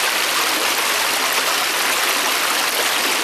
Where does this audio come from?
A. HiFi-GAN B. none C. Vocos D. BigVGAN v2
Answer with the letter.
B